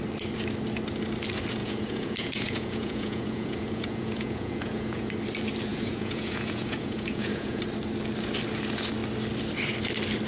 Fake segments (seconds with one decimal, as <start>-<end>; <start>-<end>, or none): 1.6-5.1; 5.7-7.6